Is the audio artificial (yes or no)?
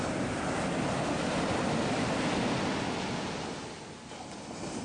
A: no